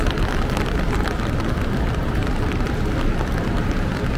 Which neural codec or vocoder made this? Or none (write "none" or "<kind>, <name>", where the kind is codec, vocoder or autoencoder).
vocoder, BigVGAN v2